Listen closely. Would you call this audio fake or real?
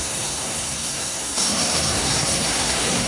fake